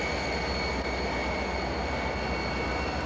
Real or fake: real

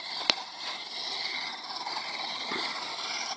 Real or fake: real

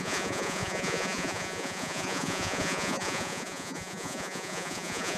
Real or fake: fake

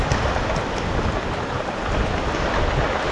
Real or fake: real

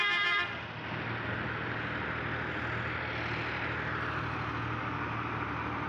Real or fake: real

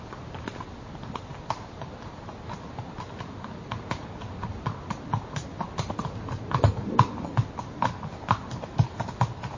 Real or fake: real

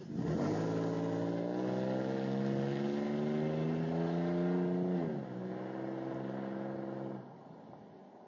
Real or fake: real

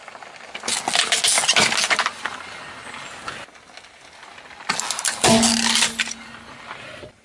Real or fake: real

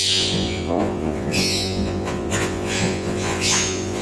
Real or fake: fake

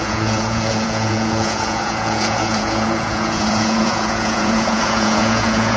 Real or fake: fake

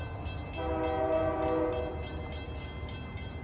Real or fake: real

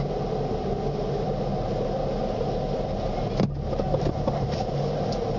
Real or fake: real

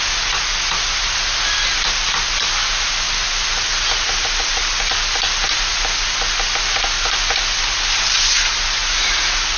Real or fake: real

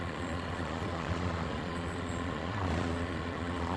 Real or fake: fake